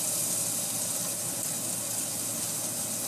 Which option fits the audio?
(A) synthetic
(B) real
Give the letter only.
B